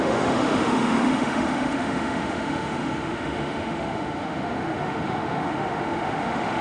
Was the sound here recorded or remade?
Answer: remade